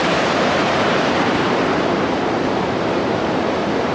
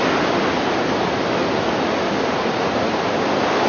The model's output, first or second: first